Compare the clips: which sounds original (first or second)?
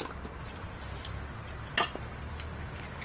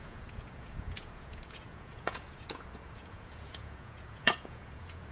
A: first